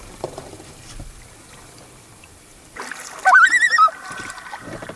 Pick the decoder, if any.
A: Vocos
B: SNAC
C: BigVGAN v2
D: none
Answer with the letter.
C